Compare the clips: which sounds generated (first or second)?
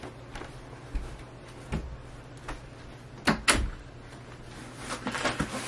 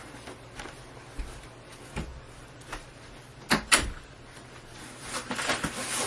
second